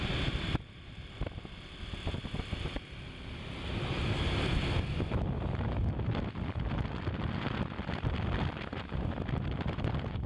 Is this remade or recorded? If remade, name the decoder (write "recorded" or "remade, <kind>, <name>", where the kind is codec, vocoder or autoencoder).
recorded